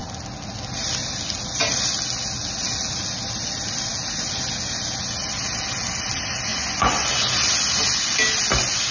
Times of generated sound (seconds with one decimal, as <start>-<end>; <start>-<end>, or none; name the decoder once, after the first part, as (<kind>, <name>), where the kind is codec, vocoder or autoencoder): 6.5-7.3 (vocoder, Vocos)

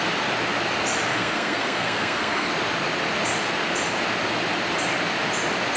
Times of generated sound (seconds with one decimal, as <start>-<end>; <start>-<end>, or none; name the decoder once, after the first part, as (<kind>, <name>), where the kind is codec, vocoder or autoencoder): 1.1-2.5 (codec, SNAC)

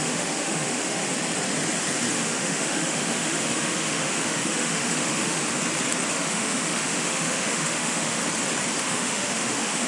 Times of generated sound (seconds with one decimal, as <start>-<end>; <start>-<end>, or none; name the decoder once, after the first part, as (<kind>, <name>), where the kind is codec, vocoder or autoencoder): 0.0-1.0 (autoencoder, DAC-VAE); 2.1-5.4; 6.1-8.2; 8.8-9.9

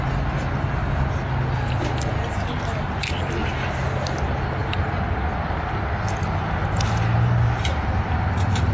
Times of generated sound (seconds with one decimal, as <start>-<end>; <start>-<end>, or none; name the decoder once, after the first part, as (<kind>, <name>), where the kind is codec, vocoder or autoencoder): none

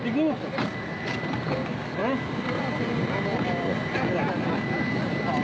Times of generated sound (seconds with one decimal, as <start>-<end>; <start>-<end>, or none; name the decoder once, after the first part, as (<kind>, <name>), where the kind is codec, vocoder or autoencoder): none

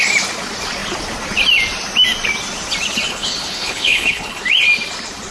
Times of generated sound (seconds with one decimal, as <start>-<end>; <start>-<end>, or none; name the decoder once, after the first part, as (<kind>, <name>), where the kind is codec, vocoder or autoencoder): 3.1-4.4 (codec, HILCodec)